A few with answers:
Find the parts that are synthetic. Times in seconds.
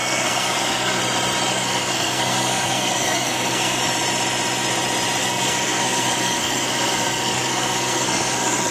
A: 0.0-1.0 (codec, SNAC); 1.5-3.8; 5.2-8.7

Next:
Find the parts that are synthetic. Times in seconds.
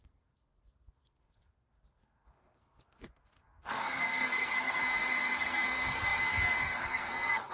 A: 0.0-7.5 (codec, SNAC)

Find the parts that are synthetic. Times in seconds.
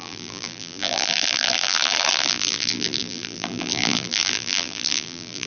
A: 0.0-5.5 (vocoder, BigVGAN v2)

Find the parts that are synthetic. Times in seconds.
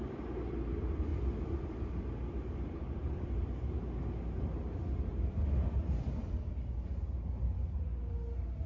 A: 1.1-3.8 (vocoder, BigVGAN v2)